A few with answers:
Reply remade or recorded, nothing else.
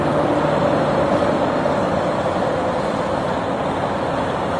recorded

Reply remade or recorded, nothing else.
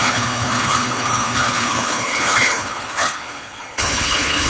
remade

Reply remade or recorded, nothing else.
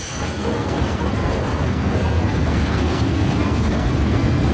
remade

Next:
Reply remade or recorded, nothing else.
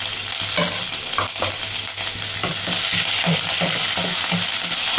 recorded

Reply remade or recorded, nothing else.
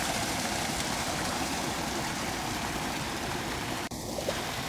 remade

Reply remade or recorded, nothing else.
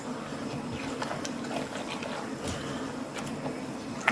recorded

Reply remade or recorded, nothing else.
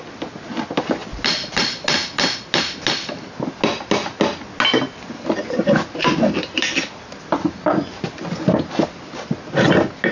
recorded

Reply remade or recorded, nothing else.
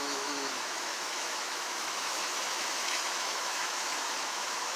remade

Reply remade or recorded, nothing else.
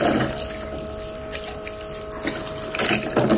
recorded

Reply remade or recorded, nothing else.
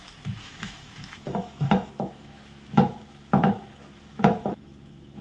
remade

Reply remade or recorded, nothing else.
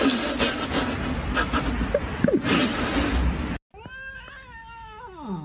recorded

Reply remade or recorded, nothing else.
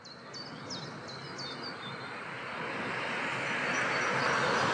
recorded